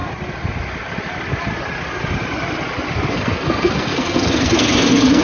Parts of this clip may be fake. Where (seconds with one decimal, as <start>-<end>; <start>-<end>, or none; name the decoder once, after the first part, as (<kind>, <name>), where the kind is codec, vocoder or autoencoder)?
3.1-5.2 (codec, SNAC)